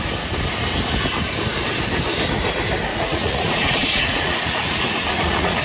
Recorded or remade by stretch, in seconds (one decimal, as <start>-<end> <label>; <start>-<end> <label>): 0.0-2.9 recorded; 2.9-5.6 remade